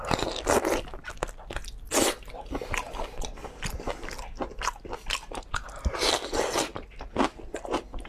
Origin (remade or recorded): recorded